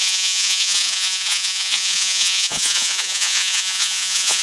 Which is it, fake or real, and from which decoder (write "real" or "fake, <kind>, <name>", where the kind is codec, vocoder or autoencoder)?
fake, vocoder, Vocos